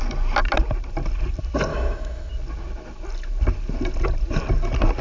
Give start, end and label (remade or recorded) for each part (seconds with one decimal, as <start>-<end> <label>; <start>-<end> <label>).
0.0-1.7 recorded; 1.7-2.3 remade; 2.3-5.0 recorded

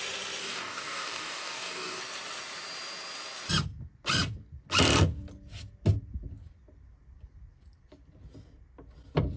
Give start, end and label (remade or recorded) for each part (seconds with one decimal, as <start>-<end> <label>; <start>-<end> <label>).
0.0-0.4 recorded; 0.4-2.0 remade; 2.0-9.4 recorded

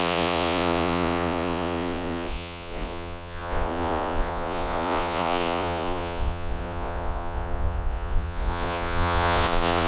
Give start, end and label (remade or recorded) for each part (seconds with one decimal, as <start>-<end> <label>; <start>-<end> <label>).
0.0-9.9 remade

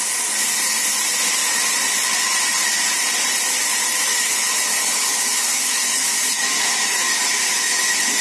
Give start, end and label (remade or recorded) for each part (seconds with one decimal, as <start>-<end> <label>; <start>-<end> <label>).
0.0-4.1 recorded; 4.1-8.2 remade

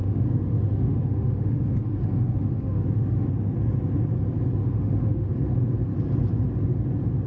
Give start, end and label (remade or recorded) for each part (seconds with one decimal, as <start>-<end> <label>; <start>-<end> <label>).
0.0-3.3 remade; 3.3-4.6 recorded; 4.6-5.3 remade; 5.3-7.3 recorded